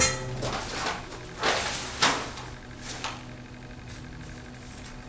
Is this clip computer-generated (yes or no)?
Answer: no